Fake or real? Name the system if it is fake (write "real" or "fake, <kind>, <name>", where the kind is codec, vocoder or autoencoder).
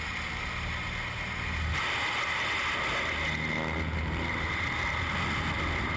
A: real